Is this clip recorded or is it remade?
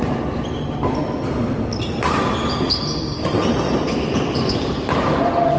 recorded